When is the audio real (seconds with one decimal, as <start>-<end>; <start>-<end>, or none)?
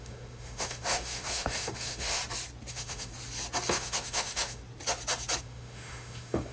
2.2-2.7; 3.1-3.7; 4.6-5.4